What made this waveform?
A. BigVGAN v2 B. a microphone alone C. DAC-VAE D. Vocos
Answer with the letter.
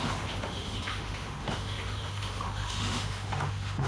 C